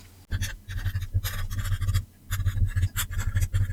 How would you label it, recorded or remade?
recorded